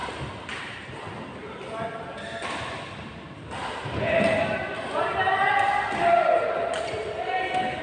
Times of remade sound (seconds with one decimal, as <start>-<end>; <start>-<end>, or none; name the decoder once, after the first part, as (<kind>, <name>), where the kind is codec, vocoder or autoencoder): 0.0-0.9 (vocoder, BigVGAN v2); 3.8-4.8